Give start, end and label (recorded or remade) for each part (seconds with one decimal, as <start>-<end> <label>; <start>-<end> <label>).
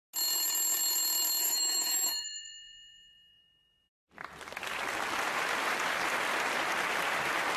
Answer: 0.0-1.4 recorded; 1.4-3.4 remade; 3.4-7.6 recorded